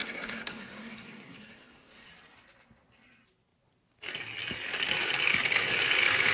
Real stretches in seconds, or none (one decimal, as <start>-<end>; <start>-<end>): 2.1-6.3